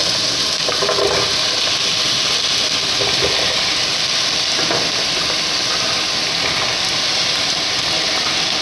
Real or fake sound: real